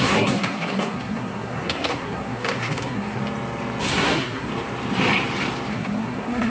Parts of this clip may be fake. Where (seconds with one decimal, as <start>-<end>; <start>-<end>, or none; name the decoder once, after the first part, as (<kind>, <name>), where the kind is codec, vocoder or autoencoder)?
0.0-3.2 (codec, SNAC); 3.8-4.5; 5.7-6.5